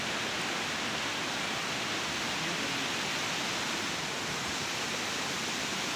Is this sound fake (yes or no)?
no